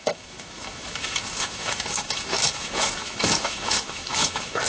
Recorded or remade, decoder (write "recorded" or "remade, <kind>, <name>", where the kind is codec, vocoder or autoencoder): remade, autoencoder, DAC-VAE